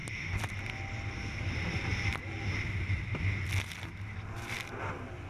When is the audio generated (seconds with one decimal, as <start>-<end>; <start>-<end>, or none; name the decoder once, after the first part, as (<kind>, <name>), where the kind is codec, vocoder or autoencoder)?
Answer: none